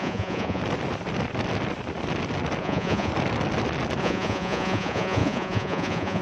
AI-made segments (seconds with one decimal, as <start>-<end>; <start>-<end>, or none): 0.0-0.6; 2.6-3.1; 4.0-6.2